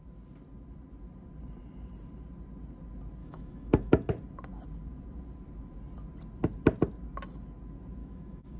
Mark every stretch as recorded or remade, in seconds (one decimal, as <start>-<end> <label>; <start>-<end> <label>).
0.0-3.2 recorded; 3.2-4.1 remade; 4.1-8.0 recorded; 8.0-8.6 remade